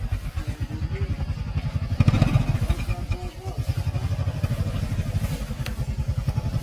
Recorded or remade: recorded